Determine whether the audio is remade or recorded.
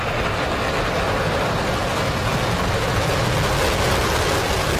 recorded